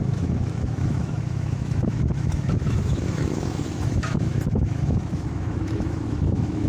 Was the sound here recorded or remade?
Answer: remade